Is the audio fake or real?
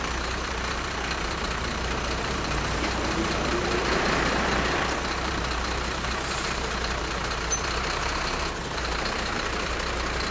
fake